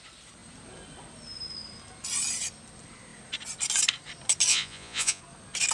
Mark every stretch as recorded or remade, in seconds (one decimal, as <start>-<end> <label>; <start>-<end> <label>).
0.0-4.5 recorded; 4.5-5.2 remade; 5.2-5.7 recorded